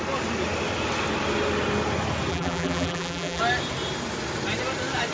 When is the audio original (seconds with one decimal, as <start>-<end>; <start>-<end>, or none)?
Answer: 0.0-2.3; 3.4-5.1